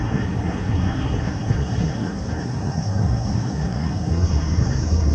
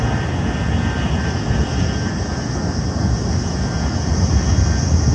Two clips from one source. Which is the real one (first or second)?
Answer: second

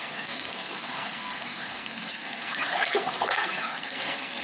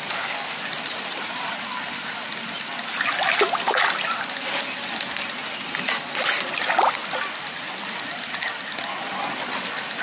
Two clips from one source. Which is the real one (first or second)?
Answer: second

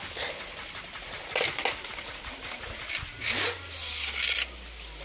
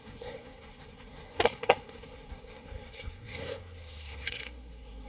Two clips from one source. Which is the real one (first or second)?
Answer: first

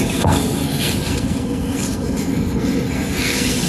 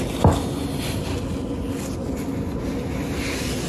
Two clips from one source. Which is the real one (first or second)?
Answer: second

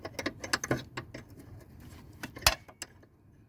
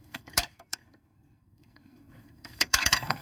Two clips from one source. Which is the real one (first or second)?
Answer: first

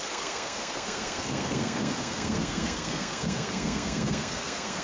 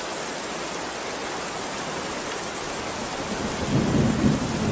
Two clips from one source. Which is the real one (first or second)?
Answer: second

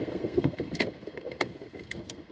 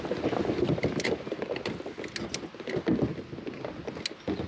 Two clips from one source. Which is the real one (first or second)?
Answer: second